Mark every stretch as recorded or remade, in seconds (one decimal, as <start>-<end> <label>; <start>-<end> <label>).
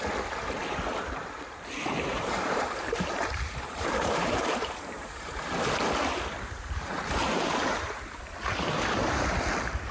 0.0-2.1 recorded; 2.1-5.5 remade; 5.5-7.2 recorded; 7.2-8.2 remade; 8.2-9.9 recorded